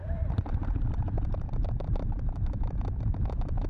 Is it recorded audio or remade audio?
remade